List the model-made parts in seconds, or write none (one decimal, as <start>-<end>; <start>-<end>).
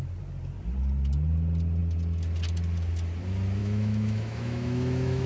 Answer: 3.6-5.3